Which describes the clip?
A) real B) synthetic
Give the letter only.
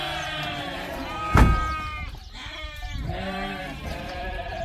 B